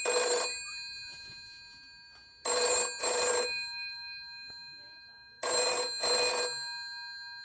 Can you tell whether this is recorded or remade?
recorded